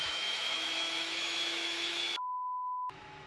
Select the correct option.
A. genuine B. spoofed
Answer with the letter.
B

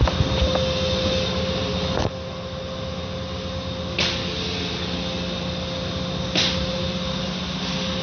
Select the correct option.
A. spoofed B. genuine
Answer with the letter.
B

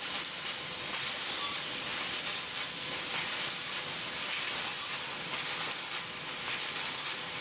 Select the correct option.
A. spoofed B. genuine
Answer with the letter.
A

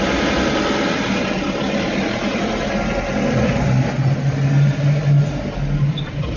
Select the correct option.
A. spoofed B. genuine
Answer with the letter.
B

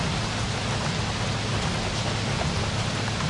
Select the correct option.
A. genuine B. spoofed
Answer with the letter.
A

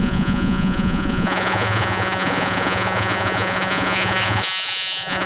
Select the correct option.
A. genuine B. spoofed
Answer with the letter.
B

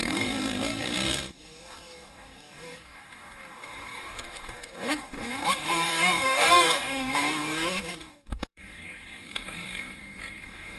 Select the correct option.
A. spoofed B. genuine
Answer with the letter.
A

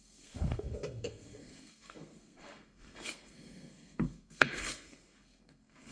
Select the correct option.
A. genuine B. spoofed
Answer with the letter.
B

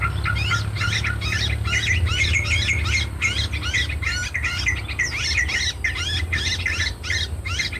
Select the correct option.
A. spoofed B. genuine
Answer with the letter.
B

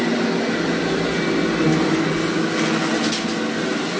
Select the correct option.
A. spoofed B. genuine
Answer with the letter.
B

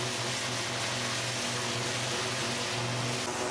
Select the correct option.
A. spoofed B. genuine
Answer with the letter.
B